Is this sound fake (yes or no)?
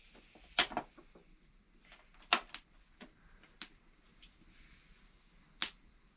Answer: no